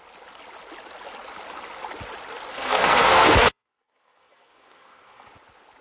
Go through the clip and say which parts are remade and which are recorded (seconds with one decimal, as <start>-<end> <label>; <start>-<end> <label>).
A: 0.0-2.5 recorded; 2.5-5.3 remade; 5.3-5.8 recorded